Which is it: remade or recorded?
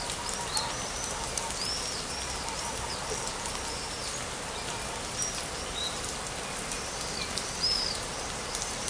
recorded